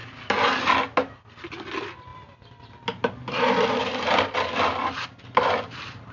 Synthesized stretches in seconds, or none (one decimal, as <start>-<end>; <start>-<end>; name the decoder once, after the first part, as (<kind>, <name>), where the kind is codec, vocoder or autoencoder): 0.0-0.7 (vocoder, BigVGAN v2); 2.1-6.1